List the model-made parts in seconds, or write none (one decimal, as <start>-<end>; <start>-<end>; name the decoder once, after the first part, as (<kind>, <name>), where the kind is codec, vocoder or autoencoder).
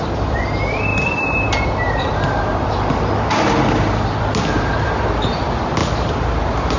none